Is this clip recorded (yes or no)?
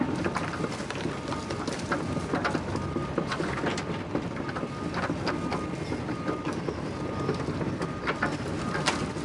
yes